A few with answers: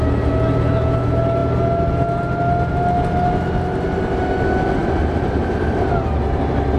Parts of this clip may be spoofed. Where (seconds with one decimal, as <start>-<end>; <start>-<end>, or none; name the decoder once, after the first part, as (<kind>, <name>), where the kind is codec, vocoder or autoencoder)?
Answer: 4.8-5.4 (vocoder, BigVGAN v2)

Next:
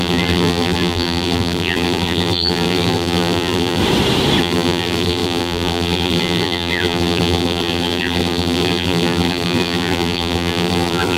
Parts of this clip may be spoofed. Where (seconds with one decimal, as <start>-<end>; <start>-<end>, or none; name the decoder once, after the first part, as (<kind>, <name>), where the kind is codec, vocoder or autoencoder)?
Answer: 0.0-3.8 (vocoder, BigVGAN v2); 4.4-11.2

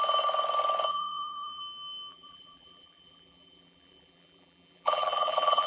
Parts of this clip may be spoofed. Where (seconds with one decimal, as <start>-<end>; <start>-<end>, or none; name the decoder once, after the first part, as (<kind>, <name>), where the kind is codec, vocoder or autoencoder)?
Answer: 0.9-1.6 (vocoder, BigVGAN v2); 2.1-5.7

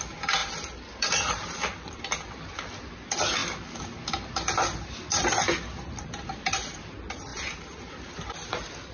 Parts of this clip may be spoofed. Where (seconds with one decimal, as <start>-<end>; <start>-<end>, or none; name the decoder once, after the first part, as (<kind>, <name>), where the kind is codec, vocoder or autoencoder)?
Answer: 0.4-2.0 (vocoder, BigVGAN v2); 7.3-8.9

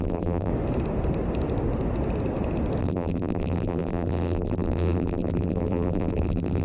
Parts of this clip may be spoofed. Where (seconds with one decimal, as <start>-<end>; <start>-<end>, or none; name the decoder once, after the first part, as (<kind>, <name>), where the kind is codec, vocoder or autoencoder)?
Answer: 0.0-0.5 (vocoder, BigVGAN v2); 2.8-6.6

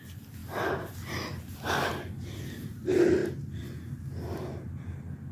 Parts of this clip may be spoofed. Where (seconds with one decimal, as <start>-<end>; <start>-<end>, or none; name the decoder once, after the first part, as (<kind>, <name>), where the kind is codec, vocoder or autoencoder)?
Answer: 3.2-4.0 (vocoder, BigVGAN v2)

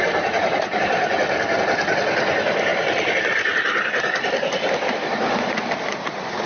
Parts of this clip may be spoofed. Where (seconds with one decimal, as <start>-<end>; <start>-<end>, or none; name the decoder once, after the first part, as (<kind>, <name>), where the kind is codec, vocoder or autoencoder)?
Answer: 0.0-6.5 (vocoder, BigVGAN v2)